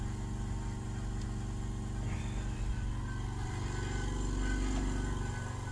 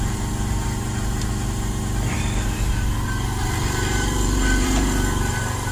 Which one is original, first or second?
first